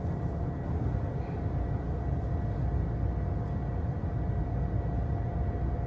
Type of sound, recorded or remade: recorded